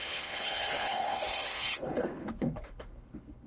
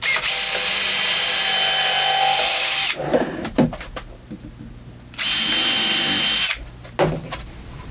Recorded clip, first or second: second